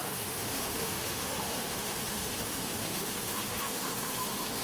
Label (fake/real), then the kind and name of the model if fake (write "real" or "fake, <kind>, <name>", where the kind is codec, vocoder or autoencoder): fake, autoencoder, DAC-VAE